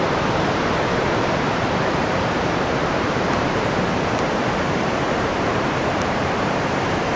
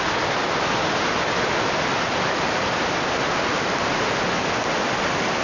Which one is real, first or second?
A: second